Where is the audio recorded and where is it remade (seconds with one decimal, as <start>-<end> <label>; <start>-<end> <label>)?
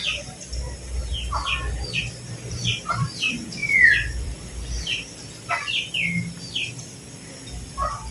0.0-3.6 recorded; 3.6-8.1 remade